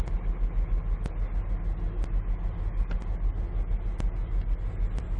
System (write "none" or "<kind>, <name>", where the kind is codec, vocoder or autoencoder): none